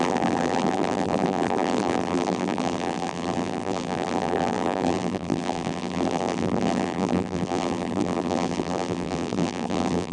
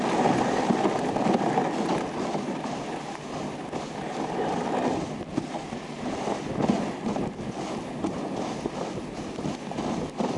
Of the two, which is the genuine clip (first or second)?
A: second